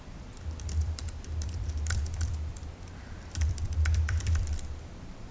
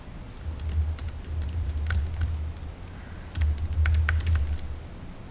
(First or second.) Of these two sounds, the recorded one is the second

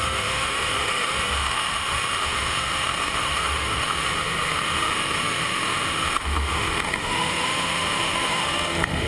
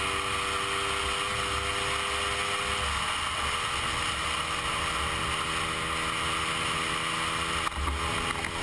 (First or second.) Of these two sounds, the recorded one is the second